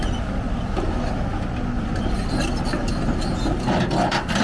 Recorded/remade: recorded